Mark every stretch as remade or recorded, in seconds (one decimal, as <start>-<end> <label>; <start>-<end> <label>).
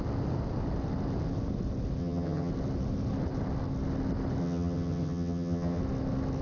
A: 0.0-2.0 recorded; 2.0-2.5 remade; 2.5-4.4 recorded; 4.4-5.8 remade; 5.8-6.4 recorded